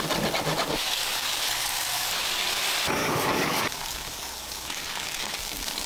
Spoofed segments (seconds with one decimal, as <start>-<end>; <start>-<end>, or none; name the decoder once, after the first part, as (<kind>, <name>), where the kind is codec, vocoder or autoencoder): 0.5-2.6 (codec, DAC); 3.0-5.9